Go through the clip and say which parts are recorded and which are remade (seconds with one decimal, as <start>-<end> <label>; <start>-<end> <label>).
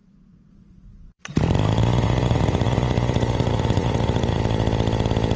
0.0-1.4 remade; 1.4-1.8 recorded; 1.8-4.4 remade; 4.4-5.4 recorded